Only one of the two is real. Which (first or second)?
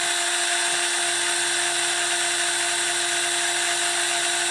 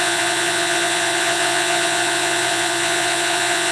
first